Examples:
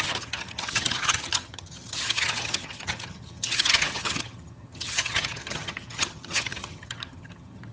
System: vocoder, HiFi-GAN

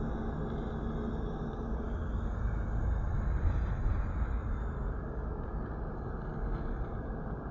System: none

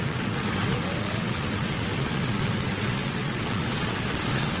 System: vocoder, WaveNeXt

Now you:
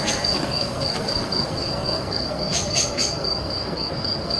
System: codec, SNAC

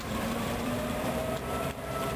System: vocoder, BigVGAN v2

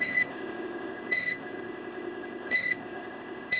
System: codec, ZipCodec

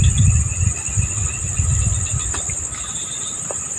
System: none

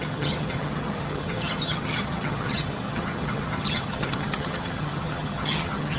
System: vocoder, HiFi-GAN